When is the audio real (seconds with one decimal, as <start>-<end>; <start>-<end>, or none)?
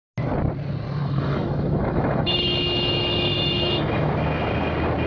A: 0.0-1.0; 4.1-5.1